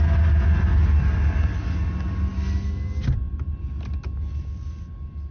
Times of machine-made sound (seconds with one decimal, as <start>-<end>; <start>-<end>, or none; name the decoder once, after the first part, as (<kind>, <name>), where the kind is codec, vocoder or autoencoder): none